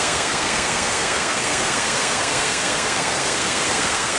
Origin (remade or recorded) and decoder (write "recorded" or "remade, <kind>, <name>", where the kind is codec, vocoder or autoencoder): remade, codec, SNAC